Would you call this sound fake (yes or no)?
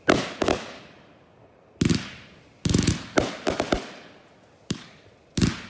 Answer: no